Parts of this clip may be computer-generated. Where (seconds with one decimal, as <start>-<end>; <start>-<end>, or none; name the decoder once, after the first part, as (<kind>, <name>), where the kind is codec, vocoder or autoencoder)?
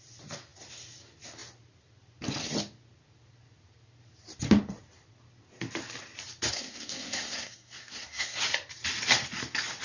6.5-8.4 (codec, SNAC)